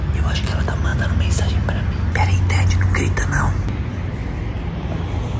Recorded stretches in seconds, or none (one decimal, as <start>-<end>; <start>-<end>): 0.0-5.4